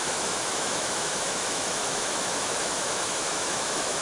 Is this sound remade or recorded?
remade